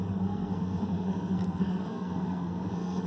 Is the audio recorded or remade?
remade